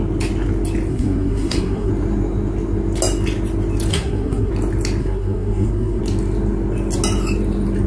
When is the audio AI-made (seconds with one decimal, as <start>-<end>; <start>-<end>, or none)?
0.9-1.9; 3.9-4.5; 5.0-6.0